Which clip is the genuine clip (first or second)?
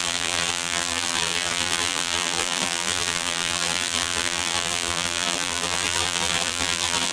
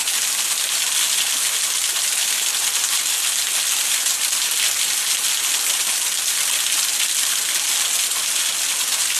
second